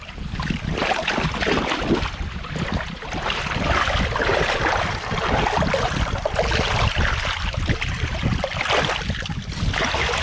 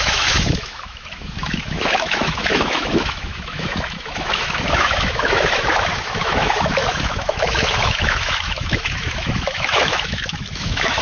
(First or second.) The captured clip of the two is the first